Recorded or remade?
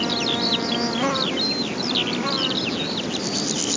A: recorded